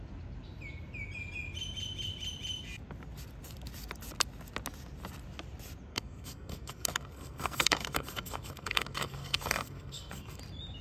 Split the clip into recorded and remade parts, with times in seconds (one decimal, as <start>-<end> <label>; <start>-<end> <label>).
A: 0.0-5.9 recorded; 5.9-10.4 remade; 10.4-10.8 recorded